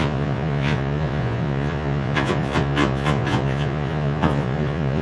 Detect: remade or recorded remade